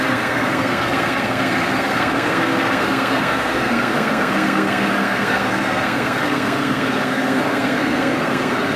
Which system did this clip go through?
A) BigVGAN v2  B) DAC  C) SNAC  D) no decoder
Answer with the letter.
C